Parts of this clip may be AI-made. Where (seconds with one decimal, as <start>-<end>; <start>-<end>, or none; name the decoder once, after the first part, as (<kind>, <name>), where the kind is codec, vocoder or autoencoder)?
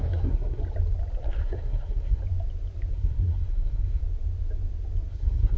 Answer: 0.0-0.6 (codec, SNAC); 1.2-2.2; 2.9-4.0; 5.1-5.6